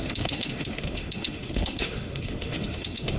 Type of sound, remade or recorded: remade